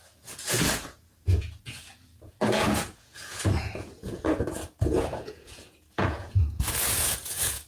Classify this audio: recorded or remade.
remade